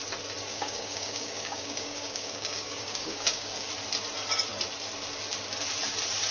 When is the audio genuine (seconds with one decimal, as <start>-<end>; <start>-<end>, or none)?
0.0-0.5; 3.7-6.3